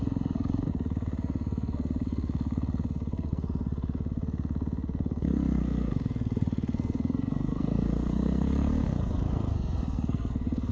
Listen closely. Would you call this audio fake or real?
fake